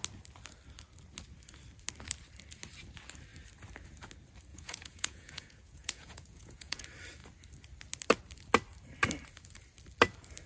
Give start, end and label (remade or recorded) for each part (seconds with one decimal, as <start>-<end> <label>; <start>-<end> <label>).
0.0-4.5 recorded; 4.5-6.8 remade; 6.8-10.5 recorded